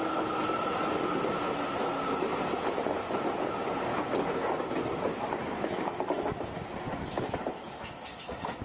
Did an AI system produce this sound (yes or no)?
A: no